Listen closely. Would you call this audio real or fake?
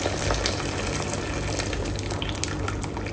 real